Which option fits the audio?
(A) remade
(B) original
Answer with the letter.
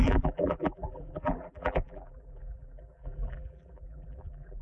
A